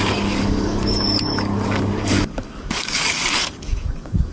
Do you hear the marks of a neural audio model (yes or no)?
yes